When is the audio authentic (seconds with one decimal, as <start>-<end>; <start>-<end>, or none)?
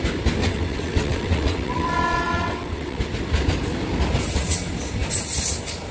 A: 0.0-0.4; 3.0-5.9